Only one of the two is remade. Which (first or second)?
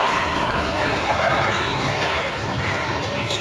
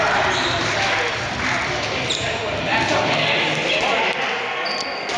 first